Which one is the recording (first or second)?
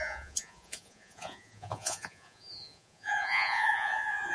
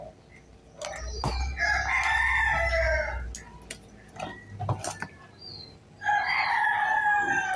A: second